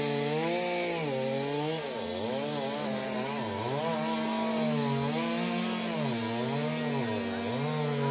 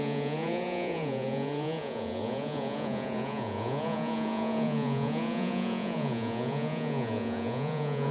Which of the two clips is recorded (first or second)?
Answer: first